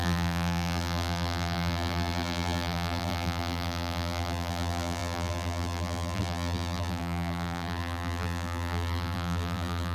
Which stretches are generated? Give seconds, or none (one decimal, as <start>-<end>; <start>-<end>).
0.0-9.9